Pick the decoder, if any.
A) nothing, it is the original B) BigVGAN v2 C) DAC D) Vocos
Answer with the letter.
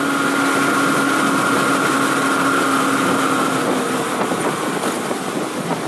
A